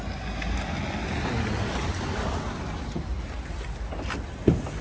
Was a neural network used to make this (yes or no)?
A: no